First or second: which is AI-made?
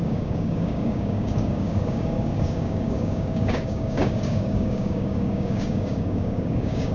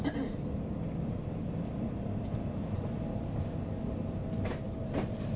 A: first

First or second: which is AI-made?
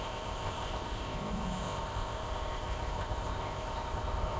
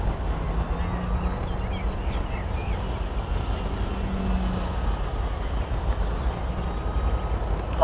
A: first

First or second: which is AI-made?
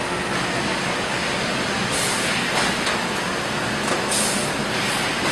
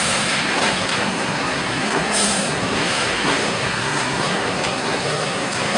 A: second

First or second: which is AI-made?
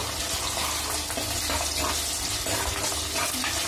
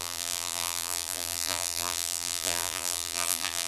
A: second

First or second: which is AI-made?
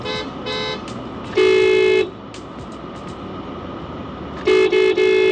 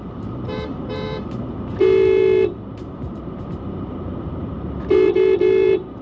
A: second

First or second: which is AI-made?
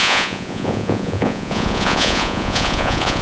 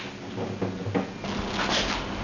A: first